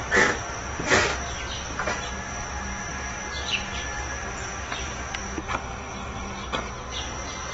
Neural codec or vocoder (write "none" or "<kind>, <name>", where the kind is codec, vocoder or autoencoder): none